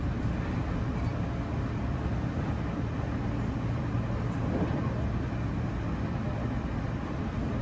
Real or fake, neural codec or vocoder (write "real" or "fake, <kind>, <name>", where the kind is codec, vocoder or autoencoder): real